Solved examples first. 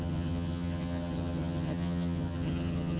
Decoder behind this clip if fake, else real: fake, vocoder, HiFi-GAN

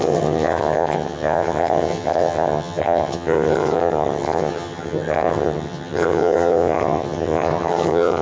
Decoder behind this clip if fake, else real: fake, vocoder, HiFi-GAN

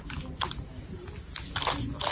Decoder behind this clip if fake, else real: real